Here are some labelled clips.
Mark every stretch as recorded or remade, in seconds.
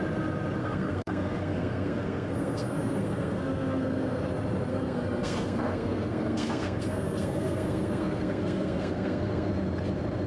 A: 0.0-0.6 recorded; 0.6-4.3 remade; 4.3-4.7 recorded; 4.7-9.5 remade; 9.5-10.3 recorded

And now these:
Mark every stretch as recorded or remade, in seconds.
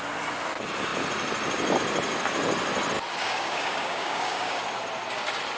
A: 0.0-3.2 recorded; 3.2-4.6 remade; 4.6-5.6 recorded